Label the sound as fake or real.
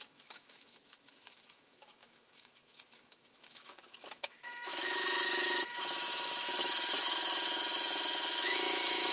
fake